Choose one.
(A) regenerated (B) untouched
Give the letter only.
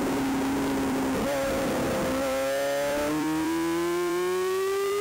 A